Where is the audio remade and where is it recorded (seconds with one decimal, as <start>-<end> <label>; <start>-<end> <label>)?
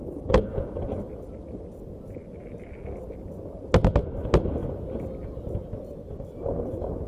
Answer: 0.0-7.1 recorded